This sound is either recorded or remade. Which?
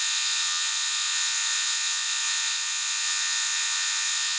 remade